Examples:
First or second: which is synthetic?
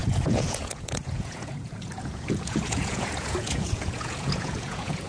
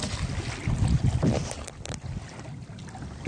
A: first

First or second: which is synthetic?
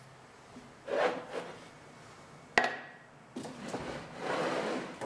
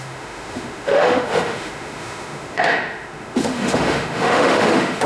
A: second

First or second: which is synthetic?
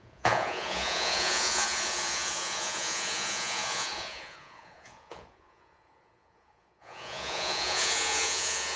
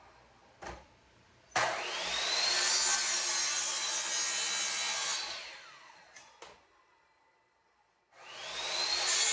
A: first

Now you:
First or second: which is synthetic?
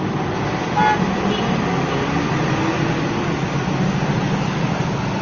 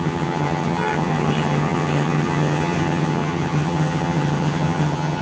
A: second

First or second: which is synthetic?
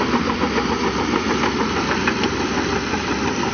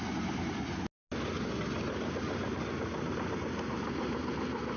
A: first